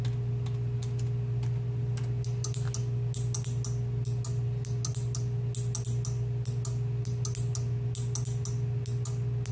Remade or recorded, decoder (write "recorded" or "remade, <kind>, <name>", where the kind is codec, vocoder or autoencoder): recorded